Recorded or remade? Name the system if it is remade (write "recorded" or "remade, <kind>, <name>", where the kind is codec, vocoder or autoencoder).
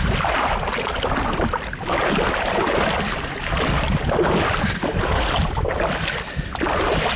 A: recorded